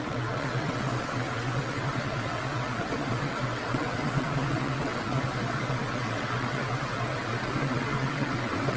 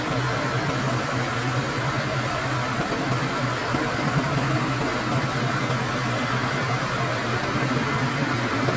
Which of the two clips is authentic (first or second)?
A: second